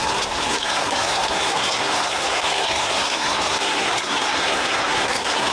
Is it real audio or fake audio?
fake